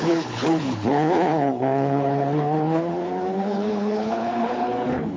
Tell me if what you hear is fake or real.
fake